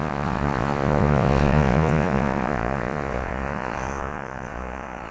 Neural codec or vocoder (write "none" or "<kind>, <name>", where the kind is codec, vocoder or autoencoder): vocoder, Vocos